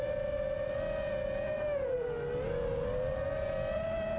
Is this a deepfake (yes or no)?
no